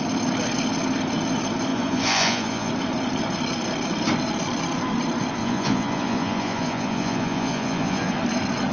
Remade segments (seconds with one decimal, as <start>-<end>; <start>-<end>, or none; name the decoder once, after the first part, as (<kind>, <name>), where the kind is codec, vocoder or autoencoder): 1.7-2.7 (vocoder, Vocos); 5.4-8.1